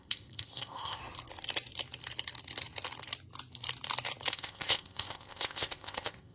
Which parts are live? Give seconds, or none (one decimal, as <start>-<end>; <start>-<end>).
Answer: 1.0-4.3